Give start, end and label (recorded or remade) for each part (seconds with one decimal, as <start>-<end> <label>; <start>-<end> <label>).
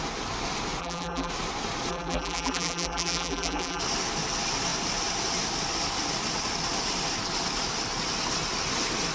0.0-0.8 recorded; 0.8-1.3 remade; 1.3-1.9 recorded; 1.9-3.8 remade; 3.8-9.1 recorded